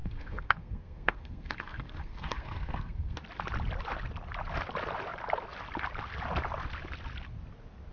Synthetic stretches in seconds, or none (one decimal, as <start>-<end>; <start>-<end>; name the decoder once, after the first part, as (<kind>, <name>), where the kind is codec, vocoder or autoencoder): 0.0-3.2 (codec, SNAC)